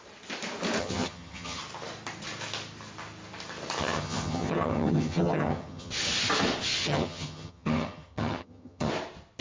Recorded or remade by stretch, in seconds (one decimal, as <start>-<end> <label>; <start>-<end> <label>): 0.0-0.8 recorded; 0.8-1.6 remade; 1.6-3.8 recorded; 3.8-5.9 remade; 5.9-6.8 recorded; 6.8-8.9 remade; 8.9-9.4 recorded